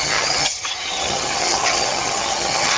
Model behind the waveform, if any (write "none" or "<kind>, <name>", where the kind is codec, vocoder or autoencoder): vocoder, HiFi-GAN